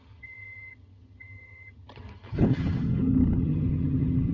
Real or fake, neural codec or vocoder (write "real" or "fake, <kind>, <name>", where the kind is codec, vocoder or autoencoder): fake, vocoder, HiFi-GAN